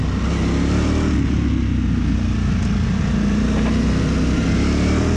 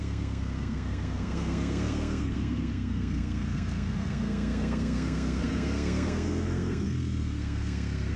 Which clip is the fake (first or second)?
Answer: second